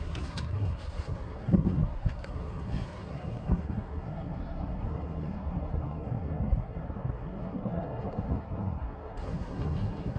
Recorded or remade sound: remade